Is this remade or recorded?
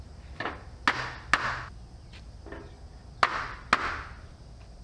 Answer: recorded